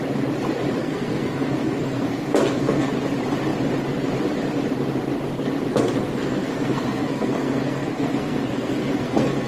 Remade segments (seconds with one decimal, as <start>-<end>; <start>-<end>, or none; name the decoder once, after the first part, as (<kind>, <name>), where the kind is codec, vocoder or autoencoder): 0.8-2.9 (codec, SNAC); 5.7-9.5